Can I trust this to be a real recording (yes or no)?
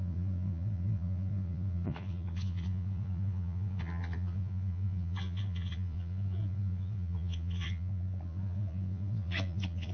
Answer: no